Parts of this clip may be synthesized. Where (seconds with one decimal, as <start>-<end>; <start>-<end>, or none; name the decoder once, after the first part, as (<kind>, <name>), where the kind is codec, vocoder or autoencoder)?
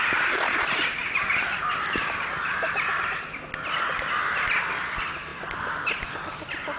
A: none